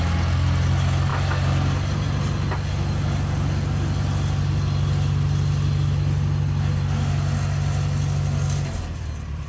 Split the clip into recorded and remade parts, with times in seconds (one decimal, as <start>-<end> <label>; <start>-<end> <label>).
0.0-9.5 recorded